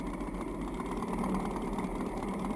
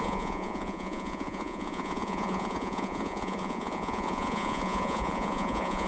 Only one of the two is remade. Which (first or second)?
second